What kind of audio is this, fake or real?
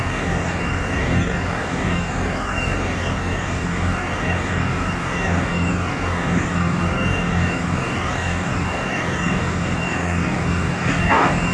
fake